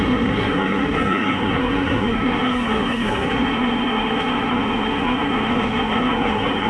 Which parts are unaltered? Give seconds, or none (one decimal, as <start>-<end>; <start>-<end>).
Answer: none